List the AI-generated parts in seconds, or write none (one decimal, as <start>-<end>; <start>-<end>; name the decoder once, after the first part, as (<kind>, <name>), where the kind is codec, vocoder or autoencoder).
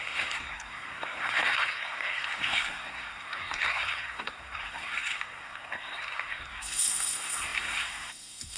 0.0-8.6 (codec, SNAC)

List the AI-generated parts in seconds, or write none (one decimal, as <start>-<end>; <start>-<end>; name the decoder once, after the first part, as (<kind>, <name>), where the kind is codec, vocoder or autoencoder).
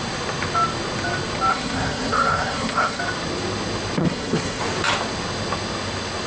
1.5-3.0 (codec, SNAC); 4.0-4.6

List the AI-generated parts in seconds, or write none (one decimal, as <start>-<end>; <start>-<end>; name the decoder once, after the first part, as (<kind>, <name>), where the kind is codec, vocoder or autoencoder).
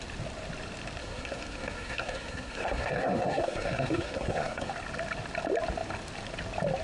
1.0-4.7 (codec, SNAC)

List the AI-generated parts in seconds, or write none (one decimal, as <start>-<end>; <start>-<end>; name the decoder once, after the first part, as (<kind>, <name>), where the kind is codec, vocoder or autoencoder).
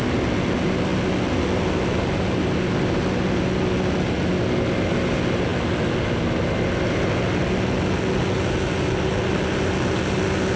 none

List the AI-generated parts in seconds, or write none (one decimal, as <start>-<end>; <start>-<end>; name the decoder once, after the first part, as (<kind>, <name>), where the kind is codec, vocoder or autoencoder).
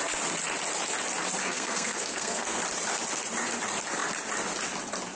1.4-2.6 (codec, SNAC)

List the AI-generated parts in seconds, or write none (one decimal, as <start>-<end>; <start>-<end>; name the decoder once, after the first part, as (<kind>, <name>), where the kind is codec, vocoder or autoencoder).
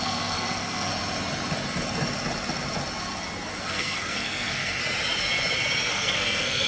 0.0-0.9 (codec, SNAC); 3.6-4.8; 5.9-6.7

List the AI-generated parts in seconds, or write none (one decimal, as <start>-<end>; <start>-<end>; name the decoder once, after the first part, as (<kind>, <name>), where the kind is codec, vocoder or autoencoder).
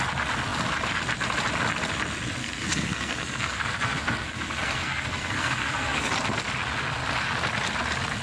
2.4-6.1 (codec, SNAC)